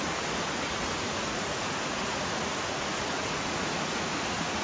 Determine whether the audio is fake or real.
fake